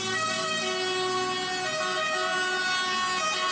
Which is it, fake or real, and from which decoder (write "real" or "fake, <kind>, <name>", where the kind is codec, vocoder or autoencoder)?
real